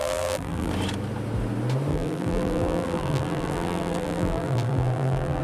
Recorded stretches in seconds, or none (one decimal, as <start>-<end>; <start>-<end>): 0.7-1.9